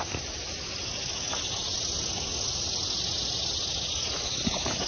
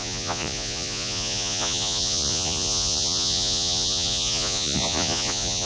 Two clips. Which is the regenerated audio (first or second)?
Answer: second